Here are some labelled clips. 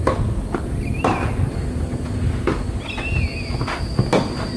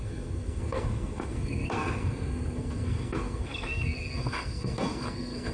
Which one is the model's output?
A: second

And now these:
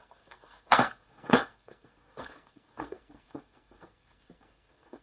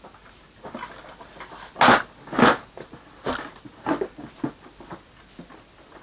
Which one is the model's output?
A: first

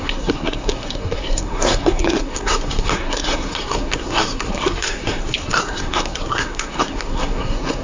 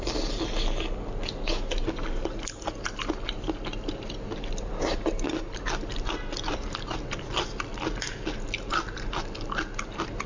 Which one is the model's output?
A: first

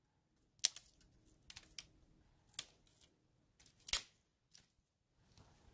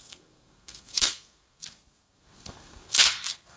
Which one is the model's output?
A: second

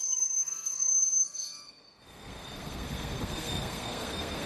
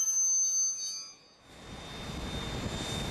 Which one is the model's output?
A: first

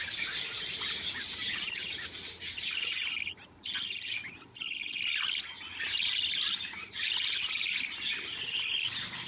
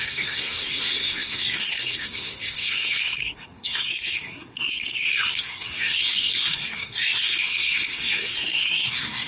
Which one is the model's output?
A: second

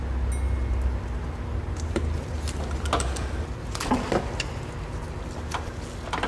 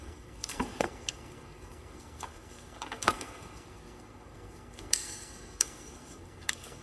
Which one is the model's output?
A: second